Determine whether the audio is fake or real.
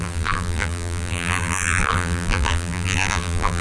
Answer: fake